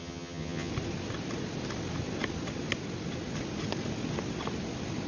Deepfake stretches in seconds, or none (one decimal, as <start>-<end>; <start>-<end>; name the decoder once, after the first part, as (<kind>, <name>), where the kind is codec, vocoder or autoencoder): 0.0-0.7 (vocoder, HiFi-GAN)